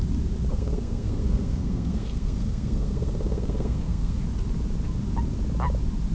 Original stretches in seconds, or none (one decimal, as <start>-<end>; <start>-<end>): 0.0-0.5; 4.2-6.1